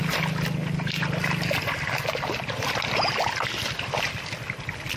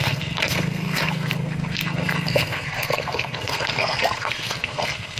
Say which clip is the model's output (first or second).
second